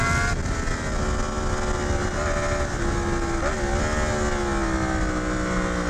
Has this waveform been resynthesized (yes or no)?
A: no